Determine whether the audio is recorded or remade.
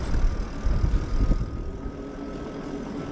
recorded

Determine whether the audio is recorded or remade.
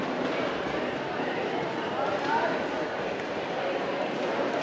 recorded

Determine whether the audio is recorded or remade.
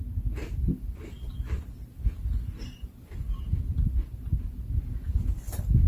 recorded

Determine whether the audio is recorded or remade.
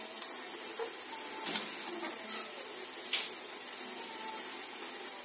recorded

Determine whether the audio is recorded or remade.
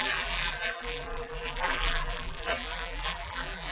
remade